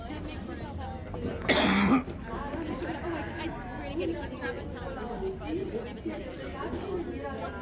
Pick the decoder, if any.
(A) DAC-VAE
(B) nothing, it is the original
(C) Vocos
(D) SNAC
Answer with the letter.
B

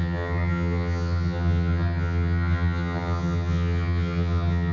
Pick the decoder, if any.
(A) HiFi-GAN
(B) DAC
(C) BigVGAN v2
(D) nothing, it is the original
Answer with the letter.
A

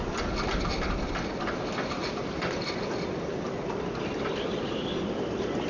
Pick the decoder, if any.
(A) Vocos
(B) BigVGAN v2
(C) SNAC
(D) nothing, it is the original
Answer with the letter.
D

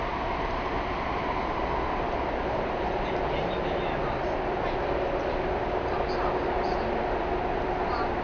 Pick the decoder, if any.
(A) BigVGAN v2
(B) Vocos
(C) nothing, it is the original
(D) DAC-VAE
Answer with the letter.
C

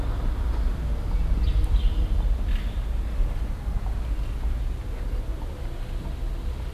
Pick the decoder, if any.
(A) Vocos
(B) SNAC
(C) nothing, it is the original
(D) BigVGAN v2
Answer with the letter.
C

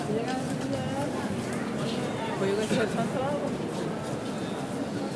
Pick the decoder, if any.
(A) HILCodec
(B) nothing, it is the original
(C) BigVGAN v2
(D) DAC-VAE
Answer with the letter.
B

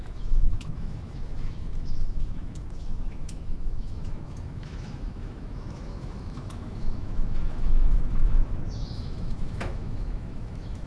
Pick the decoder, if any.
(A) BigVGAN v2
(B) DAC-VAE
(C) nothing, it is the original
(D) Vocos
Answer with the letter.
B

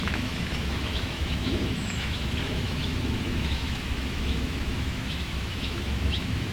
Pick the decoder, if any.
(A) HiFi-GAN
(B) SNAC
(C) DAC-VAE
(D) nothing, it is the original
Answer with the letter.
C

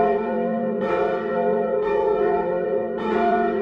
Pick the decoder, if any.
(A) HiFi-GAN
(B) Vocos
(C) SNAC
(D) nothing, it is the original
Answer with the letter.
B